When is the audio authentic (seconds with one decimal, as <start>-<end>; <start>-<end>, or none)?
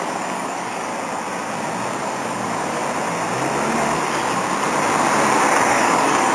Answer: 0.9-1.9; 2.8-5.7